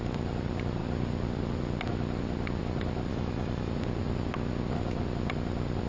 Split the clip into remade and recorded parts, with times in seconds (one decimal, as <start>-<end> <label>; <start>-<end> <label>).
0.0-3.1 recorded; 3.1-3.7 remade; 3.7-5.9 recorded